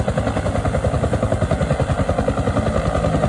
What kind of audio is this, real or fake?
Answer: real